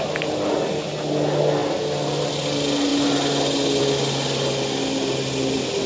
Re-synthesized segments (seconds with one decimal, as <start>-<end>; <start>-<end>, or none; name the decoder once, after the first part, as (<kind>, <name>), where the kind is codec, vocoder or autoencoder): none